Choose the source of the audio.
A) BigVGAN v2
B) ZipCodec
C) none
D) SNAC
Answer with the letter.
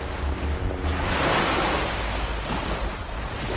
C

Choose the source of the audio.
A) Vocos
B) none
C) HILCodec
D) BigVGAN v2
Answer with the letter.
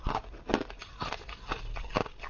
B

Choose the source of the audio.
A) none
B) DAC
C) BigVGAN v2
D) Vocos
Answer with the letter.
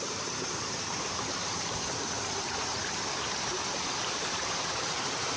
C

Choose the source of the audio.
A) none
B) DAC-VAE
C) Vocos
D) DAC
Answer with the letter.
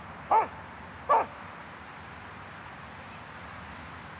A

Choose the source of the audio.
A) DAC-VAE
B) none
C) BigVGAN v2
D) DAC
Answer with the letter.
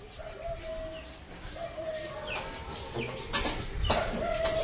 B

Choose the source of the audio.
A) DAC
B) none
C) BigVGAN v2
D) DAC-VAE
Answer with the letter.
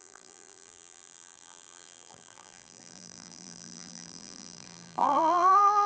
C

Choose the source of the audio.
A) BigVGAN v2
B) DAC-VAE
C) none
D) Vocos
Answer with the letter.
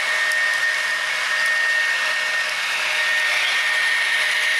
C